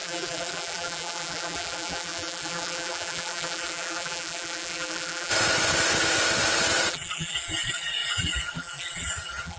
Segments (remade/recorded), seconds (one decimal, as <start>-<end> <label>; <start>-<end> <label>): 0.0-5.3 remade; 5.3-6.9 recorded; 6.9-9.6 remade